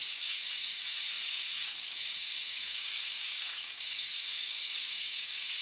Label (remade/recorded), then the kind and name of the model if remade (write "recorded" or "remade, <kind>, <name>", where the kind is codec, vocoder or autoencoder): remade, codec, DAC